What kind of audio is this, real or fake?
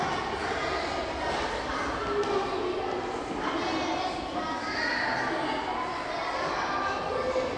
real